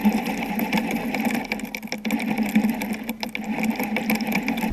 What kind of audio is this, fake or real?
real